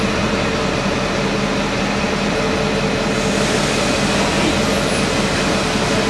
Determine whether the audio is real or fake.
real